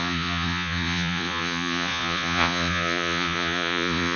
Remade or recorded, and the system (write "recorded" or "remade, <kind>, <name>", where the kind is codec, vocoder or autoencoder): remade, vocoder, Vocos